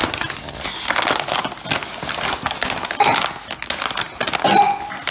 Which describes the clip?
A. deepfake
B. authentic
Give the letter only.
B